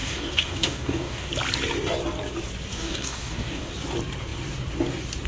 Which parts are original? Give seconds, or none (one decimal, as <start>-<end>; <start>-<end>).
1.3-2.7; 3.7-5.3